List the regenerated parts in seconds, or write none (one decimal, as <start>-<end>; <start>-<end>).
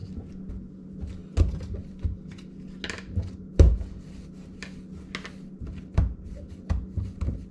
none